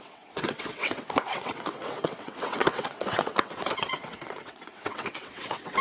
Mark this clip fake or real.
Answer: fake